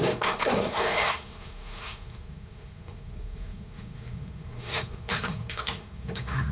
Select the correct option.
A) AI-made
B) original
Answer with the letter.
A